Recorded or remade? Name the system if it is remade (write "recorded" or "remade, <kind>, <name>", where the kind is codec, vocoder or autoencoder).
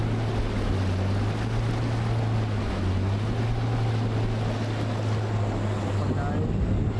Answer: recorded